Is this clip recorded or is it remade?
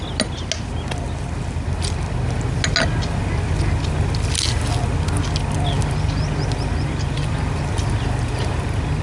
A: recorded